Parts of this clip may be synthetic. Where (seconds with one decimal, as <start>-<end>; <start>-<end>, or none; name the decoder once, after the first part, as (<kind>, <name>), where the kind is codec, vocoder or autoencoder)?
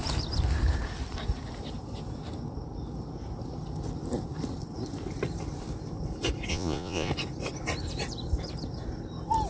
6.5-7.1 (vocoder, Vocos)